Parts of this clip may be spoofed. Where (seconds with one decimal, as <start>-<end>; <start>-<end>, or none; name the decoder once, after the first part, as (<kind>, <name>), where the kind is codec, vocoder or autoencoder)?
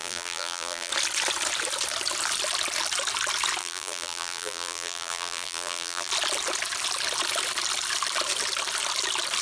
0.0-0.9 (vocoder, BigVGAN v2); 3.6-6.1